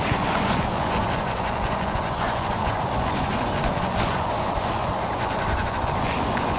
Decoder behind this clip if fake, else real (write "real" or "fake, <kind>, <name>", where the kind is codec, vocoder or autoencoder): fake, vocoder, Vocos